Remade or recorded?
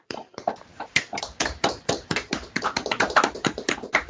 remade